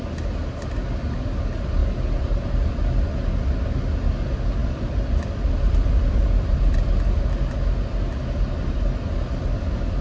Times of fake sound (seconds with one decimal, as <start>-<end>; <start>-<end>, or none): 4.6-7.7; 8.6-10.0